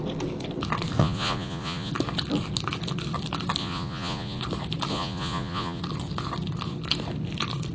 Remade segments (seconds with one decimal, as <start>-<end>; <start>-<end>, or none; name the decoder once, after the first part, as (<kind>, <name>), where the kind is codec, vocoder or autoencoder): 1.0-1.9 (vocoder, Vocos); 3.6-4.4; 4.9-5.8